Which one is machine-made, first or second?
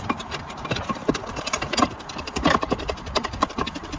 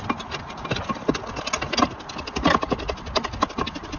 first